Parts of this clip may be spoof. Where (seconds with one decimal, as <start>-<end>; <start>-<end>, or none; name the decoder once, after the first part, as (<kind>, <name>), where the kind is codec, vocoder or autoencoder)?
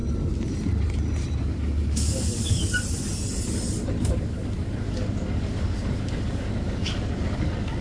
1.4-2.6 (codec, DAC); 4.0-7.8